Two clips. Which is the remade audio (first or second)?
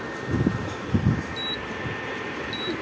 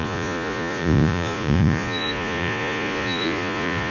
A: second